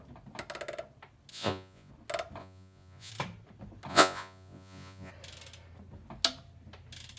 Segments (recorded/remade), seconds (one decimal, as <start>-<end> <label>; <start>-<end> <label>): 0.0-1.3 recorded; 1.3-1.9 remade; 1.9-2.4 recorded; 2.4-3.1 remade; 3.1-3.9 recorded; 3.9-5.1 remade; 5.1-7.2 recorded